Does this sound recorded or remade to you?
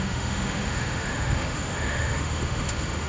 remade